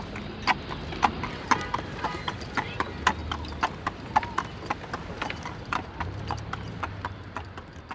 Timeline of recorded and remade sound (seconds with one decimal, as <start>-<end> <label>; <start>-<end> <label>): 0.0-7.9 recorded